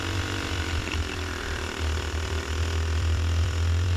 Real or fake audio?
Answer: fake